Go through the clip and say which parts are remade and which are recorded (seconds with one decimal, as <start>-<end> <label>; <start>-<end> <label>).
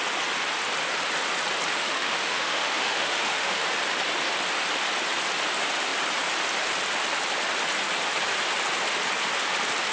0.0-1.7 recorded; 1.7-3.6 remade; 3.6-9.9 recorded